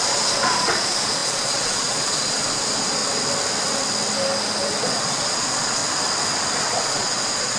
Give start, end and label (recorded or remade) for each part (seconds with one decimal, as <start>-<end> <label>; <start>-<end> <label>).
0.0-3.0 remade; 3.0-4.8 recorded; 4.8-5.8 remade; 5.8-6.8 recorded; 6.8-7.6 remade